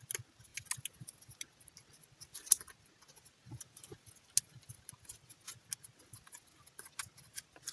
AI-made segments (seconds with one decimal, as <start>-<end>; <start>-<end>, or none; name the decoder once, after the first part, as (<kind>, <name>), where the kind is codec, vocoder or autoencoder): none